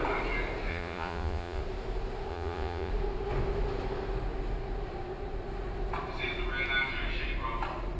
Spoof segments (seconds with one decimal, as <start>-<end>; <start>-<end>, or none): 0.7-1.6; 2.3-2.9